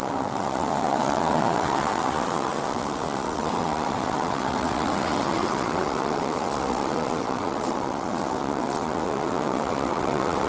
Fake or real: fake